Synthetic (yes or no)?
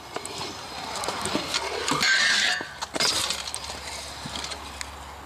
no